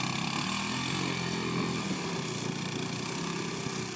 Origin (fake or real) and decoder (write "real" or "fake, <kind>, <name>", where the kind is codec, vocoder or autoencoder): real